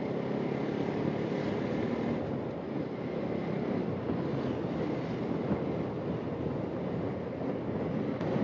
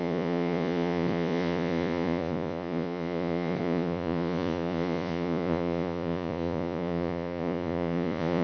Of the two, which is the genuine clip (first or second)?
first